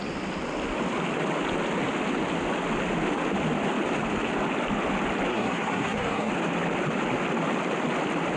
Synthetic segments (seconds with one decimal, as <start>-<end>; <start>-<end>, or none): 5.3-6.3